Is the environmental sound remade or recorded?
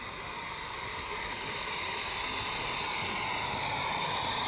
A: recorded